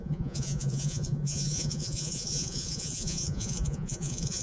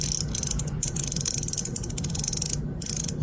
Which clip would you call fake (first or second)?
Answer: first